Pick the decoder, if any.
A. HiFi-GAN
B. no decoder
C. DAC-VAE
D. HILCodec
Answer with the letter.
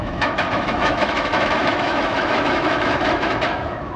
C